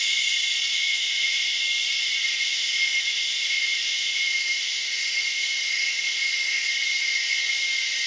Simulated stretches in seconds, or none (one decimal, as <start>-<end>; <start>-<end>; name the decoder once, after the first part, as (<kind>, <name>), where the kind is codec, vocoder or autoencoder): 0.7-1.6 (autoencoder, DAC-VAE); 2.3-6.7